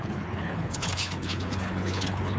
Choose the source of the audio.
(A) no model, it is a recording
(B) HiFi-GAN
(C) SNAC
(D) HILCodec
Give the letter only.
D